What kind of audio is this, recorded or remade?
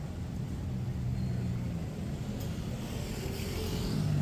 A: recorded